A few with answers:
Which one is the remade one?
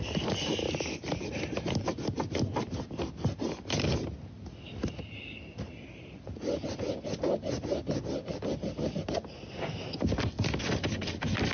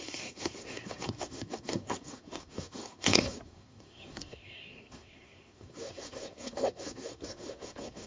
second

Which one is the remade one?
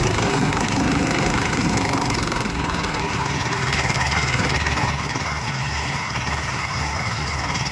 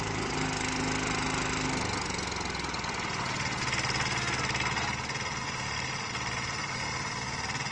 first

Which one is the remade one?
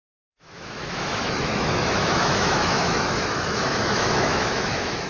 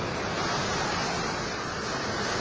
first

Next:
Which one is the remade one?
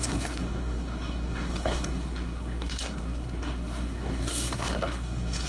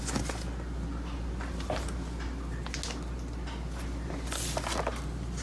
first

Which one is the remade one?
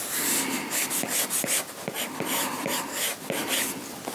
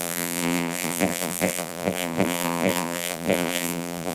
second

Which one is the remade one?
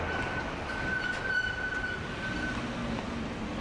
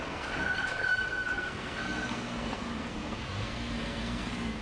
second